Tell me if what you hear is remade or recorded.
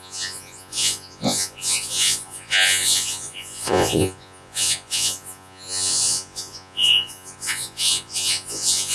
remade